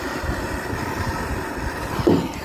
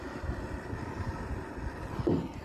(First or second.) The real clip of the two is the second